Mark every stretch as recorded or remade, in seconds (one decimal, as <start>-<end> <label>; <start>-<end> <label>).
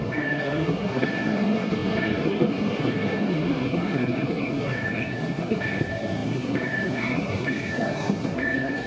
0.0-8.9 remade